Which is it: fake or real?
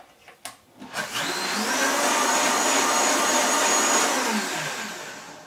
real